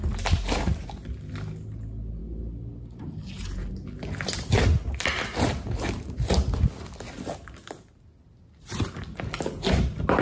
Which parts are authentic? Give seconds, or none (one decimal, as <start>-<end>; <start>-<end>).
0.0-10.2